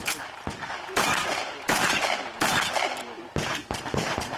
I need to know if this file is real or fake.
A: fake